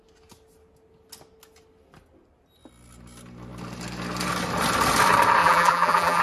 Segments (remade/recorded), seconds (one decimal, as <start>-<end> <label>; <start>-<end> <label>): 0.0-5.4 recorded; 5.4-6.2 remade